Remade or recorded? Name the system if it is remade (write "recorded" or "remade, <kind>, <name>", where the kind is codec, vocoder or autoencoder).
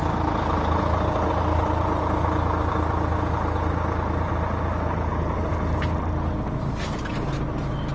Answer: recorded